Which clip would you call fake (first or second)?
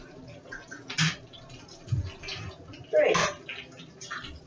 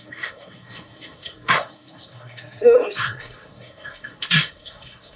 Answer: second